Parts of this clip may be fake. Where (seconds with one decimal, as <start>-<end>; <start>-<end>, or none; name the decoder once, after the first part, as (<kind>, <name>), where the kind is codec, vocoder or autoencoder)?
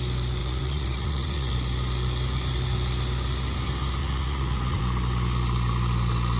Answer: 0.4-1.5 (vocoder, Vocos); 4.0-4.8